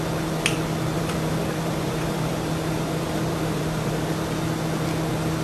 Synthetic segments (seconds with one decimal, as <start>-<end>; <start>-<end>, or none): 0.9-4.1